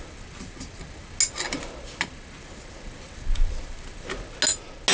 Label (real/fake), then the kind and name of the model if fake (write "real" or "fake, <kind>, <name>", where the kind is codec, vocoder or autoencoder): real